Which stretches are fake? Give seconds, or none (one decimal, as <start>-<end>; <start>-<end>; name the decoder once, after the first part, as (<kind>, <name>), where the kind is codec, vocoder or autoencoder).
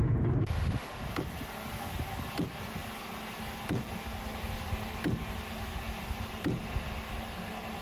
0.4-0.9 (autoencoder, DAC-VAE)